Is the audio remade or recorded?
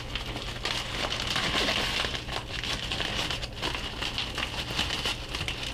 recorded